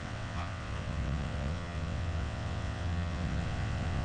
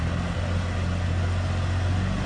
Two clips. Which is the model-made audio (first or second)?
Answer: first